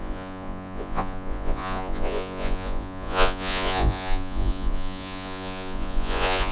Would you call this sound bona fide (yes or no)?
no